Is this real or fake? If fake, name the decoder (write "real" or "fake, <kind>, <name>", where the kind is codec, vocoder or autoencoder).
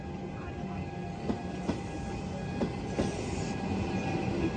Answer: real